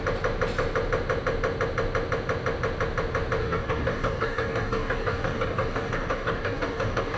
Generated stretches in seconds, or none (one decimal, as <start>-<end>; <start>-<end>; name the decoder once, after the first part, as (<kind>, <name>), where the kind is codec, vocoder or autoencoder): 3.4-7.2 (codec, DAC)